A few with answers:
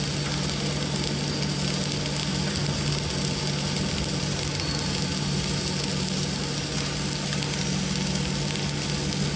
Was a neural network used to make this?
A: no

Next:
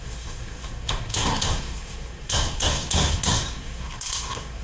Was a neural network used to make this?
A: yes